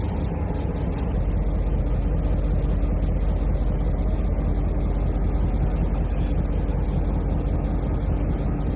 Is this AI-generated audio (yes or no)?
no